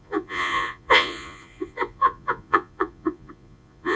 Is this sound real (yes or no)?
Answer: no